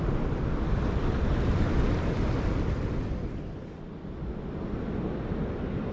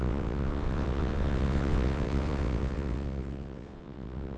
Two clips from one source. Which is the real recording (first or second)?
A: first